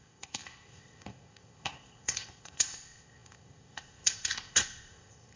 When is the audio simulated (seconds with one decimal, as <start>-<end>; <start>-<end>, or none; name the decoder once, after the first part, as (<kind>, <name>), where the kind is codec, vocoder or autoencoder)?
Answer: 0.0-5.4 (codec, ZipCodec)